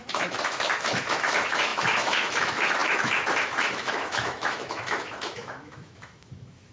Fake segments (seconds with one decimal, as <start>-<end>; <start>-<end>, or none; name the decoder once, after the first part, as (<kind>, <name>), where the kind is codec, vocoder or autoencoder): 0.0-6.7 (autoencoder, DAC-VAE)